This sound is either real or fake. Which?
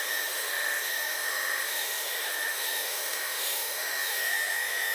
fake